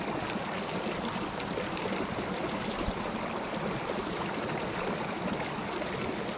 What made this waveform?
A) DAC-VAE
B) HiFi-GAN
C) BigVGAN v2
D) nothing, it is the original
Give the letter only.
D